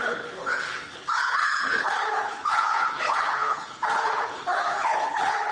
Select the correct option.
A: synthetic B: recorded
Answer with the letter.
A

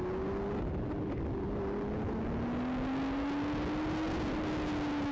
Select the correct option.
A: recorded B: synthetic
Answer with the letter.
A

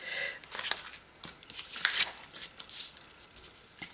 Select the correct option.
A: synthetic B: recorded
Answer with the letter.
B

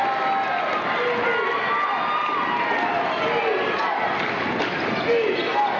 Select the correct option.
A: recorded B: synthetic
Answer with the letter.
A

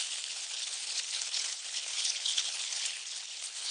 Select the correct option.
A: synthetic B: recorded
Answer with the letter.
A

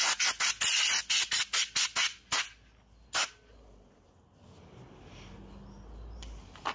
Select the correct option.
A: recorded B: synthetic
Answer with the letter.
A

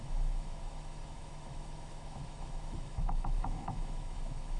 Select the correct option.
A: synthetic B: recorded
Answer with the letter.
A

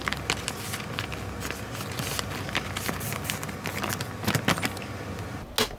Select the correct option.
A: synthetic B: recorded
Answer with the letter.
B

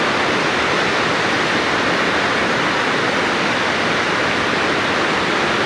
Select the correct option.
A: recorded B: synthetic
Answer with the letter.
A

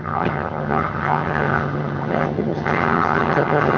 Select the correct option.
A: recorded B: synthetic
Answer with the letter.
B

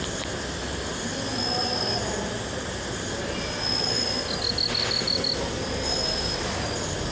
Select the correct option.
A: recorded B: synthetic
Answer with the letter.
A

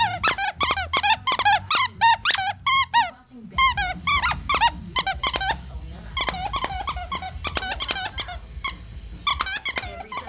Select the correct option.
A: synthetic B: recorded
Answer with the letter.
B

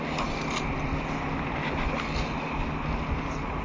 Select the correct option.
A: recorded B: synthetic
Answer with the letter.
A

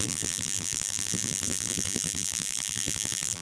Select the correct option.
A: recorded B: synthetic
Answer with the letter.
B